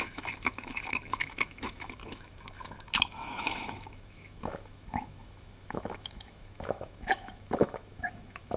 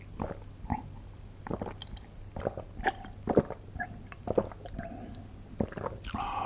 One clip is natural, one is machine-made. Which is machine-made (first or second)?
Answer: first